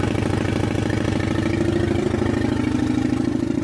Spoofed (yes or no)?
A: no